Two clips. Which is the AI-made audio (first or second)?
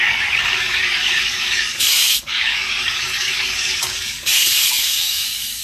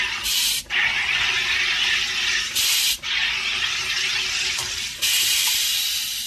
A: first